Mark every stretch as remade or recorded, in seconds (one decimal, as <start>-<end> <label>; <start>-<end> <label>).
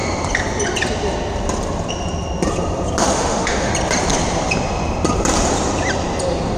0.0-3.0 recorded; 3.0-3.7 remade; 3.7-6.6 recorded